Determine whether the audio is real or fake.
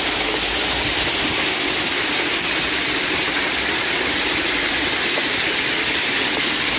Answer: real